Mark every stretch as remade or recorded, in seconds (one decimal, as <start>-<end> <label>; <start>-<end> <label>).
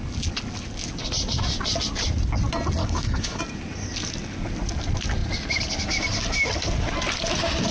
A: 0.0-2.8 recorded; 2.8-3.4 remade; 3.4-7.7 recorded